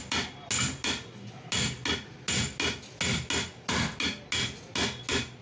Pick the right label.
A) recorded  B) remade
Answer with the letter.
A